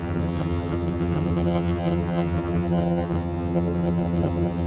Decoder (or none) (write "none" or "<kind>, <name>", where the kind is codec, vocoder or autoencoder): vocoder, HiFi-GAN